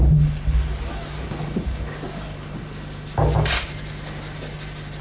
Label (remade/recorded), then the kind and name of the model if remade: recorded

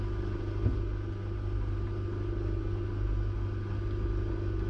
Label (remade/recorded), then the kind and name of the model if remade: recorded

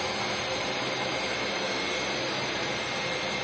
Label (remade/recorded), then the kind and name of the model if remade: remade, vocoder, BigVGAN v2